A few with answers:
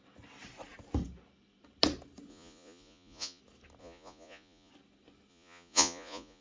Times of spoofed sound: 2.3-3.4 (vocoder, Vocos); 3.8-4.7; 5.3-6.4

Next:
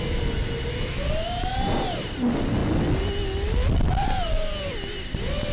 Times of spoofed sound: none

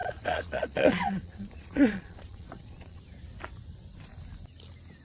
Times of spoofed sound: 0.0-3.0 (vocoder, Vocos)

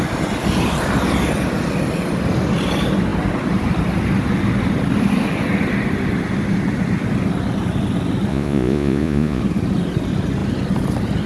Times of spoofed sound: 8.3-9.4 (vocoder, Vocos)